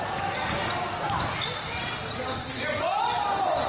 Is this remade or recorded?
recorded